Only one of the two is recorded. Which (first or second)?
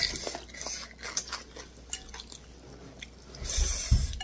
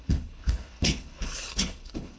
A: first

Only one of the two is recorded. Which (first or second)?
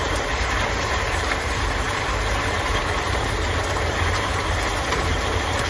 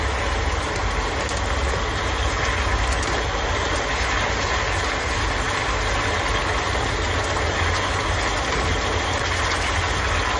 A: second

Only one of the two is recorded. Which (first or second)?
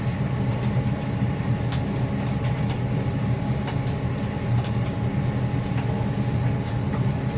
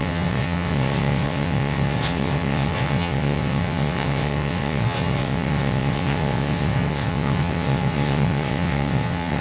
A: first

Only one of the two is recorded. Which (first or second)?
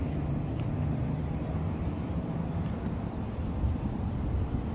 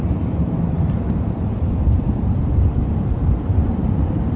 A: first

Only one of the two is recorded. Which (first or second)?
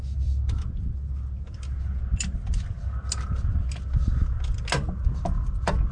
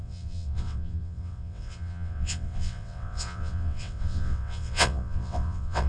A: first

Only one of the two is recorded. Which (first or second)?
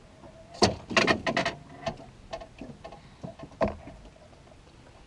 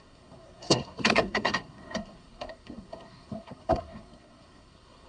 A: first